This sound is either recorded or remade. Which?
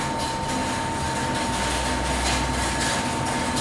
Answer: recorded